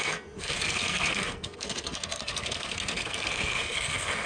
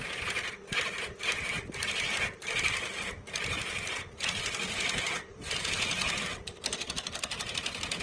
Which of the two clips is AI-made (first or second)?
first